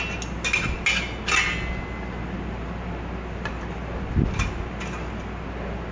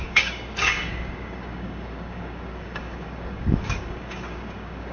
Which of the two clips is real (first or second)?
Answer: first